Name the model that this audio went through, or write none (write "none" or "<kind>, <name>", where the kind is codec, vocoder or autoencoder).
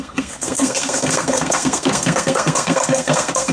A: codec, SNAC